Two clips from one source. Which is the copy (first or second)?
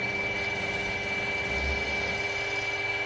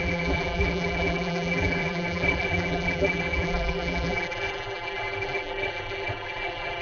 second